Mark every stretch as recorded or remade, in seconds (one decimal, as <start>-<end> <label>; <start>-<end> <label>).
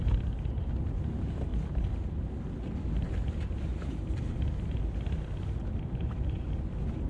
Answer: 0.0-7.1 recorded